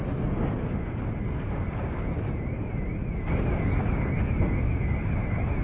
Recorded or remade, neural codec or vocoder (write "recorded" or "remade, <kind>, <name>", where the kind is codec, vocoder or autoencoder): recorded